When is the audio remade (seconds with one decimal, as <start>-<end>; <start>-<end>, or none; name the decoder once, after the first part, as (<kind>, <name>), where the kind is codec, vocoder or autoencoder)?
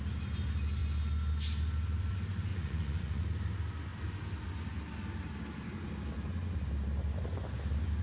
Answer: 2.5-3.2 (vocoder, Vocos)